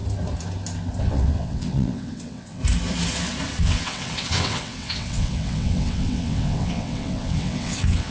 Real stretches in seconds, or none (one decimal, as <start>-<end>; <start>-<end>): 0.0-1.0; 2.6-3.6